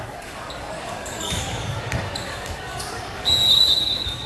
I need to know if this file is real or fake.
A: fake